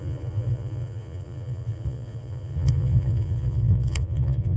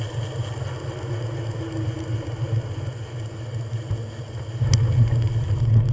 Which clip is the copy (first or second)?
first